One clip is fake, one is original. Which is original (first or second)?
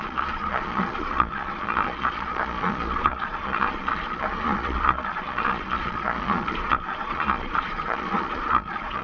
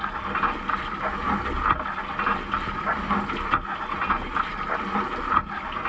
second